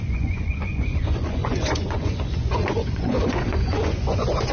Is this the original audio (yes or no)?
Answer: no